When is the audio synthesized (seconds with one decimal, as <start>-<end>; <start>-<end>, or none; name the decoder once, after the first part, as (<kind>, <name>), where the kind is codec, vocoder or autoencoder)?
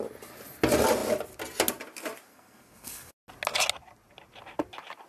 2.3-3.1 (codec, SNAC)